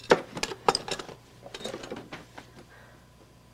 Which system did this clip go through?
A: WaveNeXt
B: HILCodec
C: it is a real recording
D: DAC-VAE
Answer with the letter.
C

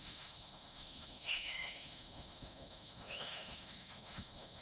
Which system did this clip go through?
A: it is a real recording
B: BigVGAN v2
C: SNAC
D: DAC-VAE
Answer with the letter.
D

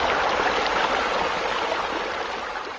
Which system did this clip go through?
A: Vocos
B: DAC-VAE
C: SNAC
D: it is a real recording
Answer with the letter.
D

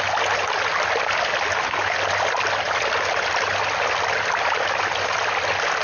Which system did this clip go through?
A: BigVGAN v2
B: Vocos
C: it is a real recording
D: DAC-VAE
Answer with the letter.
C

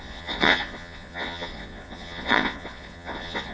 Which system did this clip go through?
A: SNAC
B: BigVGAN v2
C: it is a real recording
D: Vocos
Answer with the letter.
D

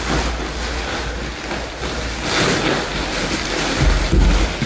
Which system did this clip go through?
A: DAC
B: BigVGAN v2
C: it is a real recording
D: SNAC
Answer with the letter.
C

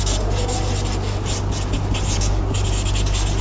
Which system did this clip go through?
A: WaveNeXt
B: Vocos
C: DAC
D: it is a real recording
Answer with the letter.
D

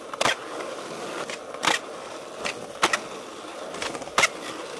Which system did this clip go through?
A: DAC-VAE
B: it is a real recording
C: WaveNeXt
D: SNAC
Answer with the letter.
B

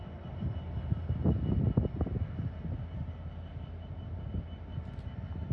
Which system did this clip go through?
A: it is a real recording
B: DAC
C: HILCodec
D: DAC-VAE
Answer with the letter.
A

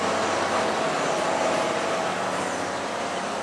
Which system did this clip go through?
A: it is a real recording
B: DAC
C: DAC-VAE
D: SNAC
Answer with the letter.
A